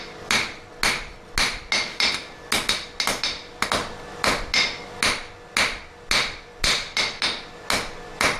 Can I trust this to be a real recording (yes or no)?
yes